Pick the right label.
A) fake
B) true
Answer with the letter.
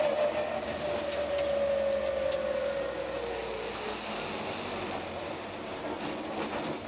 B